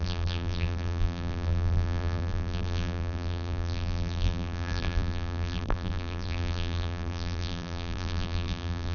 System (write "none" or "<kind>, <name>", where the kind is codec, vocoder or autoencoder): vocoder, BigVGAN v2